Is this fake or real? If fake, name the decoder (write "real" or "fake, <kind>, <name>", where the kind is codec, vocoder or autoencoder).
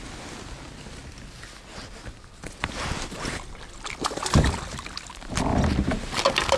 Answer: real